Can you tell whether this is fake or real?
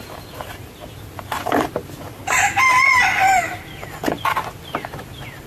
real